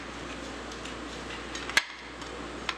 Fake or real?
real